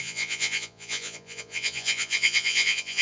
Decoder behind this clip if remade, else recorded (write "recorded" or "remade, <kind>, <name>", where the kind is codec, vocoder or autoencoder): remade, vocoder, Vocos